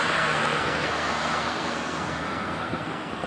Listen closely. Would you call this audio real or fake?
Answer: fake